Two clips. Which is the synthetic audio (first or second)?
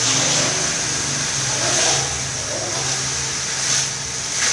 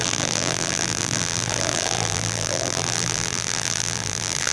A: second